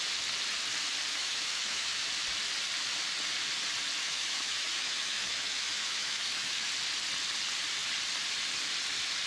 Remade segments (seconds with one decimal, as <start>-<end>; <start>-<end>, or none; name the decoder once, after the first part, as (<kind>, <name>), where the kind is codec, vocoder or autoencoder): 1.1-2.1 (autoencoder, DAC-VAE); 4.0-6.7